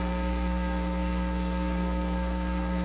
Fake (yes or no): yes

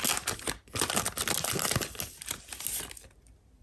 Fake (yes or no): no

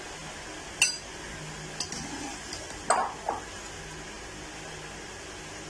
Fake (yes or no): no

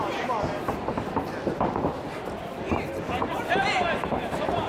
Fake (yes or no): yes